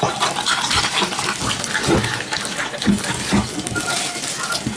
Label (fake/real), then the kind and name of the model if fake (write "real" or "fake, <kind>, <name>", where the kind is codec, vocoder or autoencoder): real